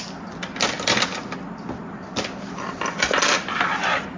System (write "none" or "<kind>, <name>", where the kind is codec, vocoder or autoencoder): none